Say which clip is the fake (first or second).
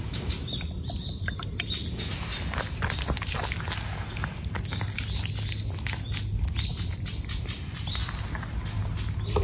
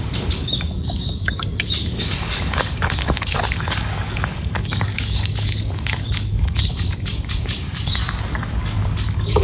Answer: second